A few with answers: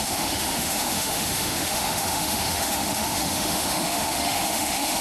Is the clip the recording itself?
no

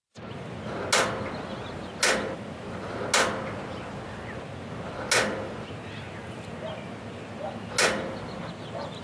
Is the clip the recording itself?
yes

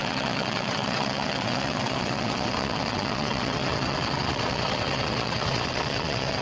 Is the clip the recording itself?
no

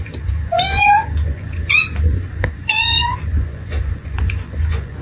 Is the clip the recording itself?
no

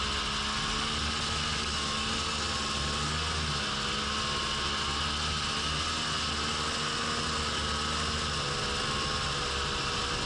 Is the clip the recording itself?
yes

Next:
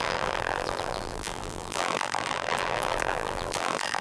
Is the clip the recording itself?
no